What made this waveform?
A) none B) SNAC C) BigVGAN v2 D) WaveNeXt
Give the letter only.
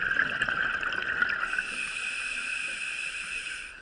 A